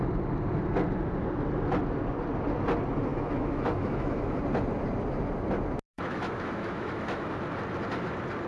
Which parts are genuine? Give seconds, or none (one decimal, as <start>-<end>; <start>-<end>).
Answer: 0.0-3.1; 4.4-5.9; 7.4-8.5